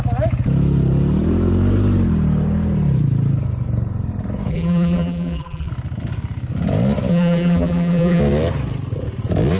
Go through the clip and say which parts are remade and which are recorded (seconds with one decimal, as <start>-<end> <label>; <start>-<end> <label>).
0.0-4.5 recorded; 4.5-5.7 remade; 5.7-7.1 recorded; 7.1-8.2 remade; 8.2-9.6 recorded